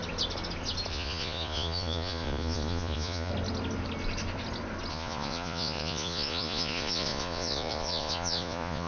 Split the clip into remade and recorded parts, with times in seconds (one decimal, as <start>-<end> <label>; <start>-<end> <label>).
0.0-0.9 recorded; 0.9-3.3 remade; 3.3-4.9 recorded; 4.9-8.9 remade